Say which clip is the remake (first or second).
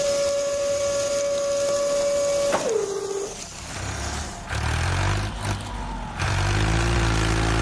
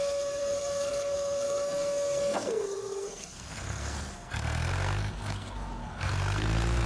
second